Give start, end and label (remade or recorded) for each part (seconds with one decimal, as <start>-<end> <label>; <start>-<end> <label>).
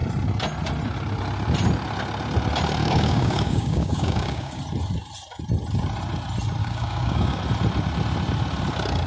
0.0-2.8 recorded; 2.8-4.6 remade; 4.6-6.6 recorded; 6.6-7.4 remade; 7.4-9.1 recorded